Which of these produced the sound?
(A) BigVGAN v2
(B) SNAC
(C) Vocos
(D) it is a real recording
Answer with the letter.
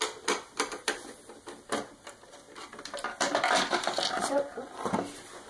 A